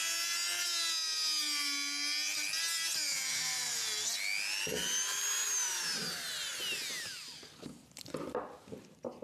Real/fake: real